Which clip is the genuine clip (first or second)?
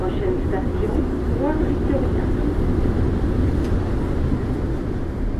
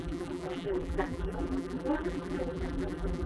first